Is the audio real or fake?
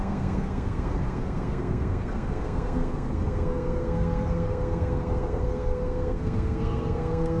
fake